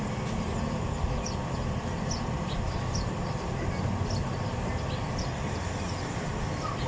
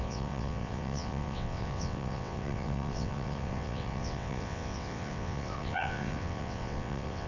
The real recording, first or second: first